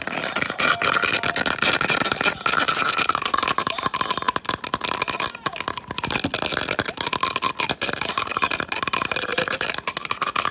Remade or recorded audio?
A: recorded